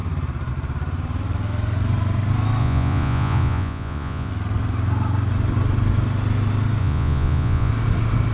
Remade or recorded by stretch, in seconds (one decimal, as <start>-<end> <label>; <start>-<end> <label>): 0.0-2.6 recorded; 2.6-4.3 remade; 4.3-6.8 recorded; 6.8-7.7 remade; 7.7-8.3 recorded